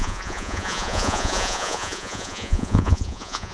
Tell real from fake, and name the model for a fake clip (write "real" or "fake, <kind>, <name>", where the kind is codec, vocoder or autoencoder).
fake, vocoder, Vocos